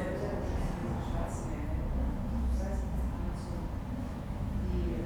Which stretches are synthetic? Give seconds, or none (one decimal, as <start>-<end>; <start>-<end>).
4.0-4.5